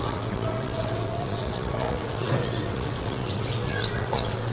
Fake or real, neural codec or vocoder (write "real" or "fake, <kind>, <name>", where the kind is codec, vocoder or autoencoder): fake, vocoder, WaveNeXt